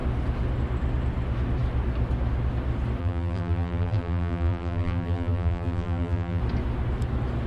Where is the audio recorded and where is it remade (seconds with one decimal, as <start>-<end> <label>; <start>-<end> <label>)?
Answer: 0.0-3.0 recorded; 3.0-6.4 remade; 6.4-7.5 recorded